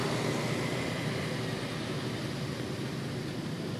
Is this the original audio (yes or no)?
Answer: yes